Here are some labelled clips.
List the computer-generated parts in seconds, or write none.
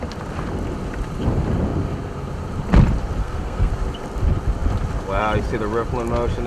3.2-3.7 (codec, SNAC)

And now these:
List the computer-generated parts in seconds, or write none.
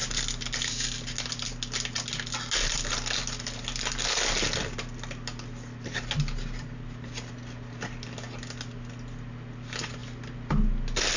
none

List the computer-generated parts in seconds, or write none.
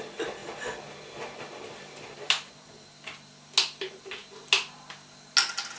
none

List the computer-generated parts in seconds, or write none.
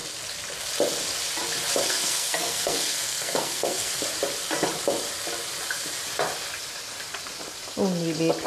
1.8-3.9 (codec, SNAC)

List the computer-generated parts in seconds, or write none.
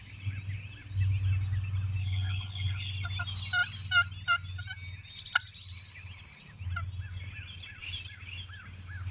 2.0-2.9 (codec, HILCodec)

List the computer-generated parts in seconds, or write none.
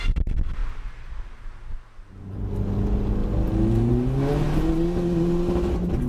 none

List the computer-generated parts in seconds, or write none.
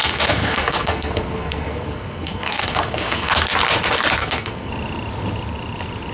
0.0-3.3 (codec, SNAC); 4.2-4.7